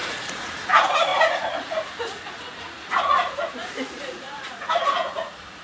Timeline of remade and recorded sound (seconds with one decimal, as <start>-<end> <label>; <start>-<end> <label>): 0.0-5.6 remade